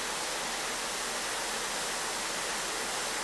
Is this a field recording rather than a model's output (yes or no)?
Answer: yes